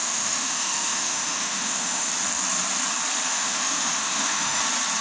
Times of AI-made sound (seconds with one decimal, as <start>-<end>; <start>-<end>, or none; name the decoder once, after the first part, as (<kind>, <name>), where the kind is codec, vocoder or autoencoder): 0.0-2.1 (autoencoder, DAC-VAE); 3.3-4.6